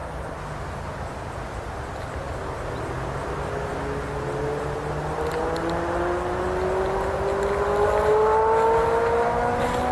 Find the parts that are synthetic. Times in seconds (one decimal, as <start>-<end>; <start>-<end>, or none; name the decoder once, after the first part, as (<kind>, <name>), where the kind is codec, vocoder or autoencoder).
none